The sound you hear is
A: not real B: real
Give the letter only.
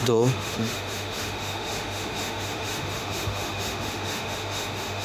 A